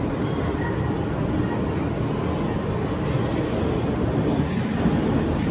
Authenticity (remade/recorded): recorded